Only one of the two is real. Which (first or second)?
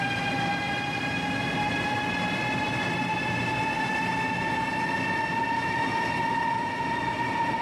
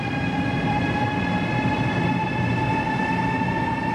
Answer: first